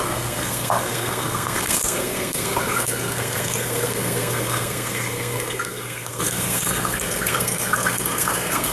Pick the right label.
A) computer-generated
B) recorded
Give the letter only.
A